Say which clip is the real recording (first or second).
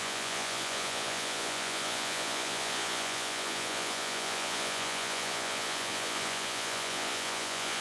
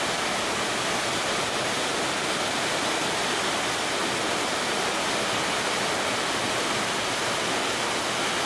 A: second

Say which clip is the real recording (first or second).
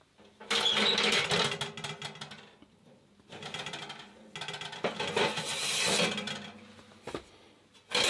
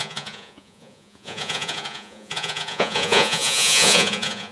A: first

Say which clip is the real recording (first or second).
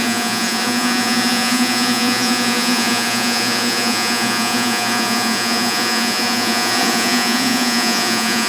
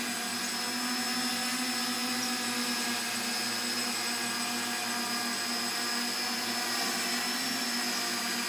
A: second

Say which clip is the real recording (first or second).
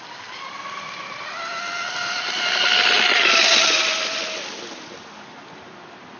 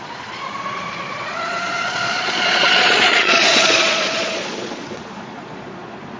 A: first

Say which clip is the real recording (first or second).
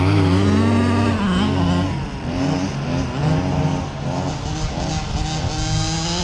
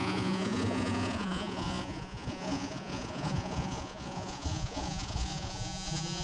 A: first